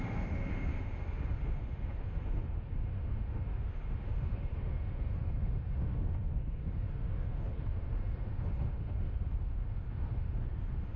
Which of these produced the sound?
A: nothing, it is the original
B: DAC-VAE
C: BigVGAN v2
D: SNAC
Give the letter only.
B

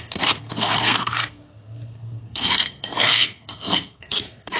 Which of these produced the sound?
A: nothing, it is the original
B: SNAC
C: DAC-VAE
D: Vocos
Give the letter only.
B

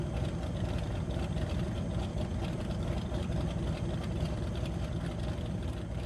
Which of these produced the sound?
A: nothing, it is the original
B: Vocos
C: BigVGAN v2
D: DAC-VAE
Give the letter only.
C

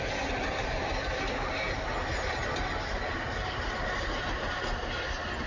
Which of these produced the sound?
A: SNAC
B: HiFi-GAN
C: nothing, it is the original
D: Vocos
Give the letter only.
C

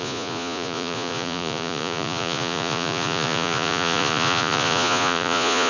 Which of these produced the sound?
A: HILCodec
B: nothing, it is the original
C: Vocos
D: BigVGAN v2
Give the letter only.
C